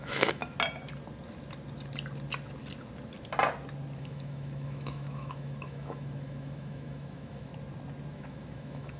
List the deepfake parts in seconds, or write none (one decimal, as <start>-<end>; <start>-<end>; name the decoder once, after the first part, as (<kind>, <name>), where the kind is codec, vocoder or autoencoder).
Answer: 0.0-0.4 (autoencoder, DAC-VAE); 4.0-7.5; 8.1-9.0